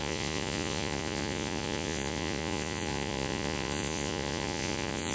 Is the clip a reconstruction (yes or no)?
yes